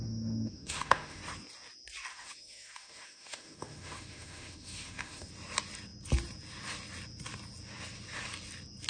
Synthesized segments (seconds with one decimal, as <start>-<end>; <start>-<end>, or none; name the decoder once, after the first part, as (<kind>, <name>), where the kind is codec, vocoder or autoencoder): 0.0-1.2 (autoencoder, DAC-VAE); 2.1-5.3